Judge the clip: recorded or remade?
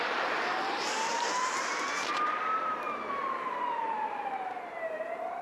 remade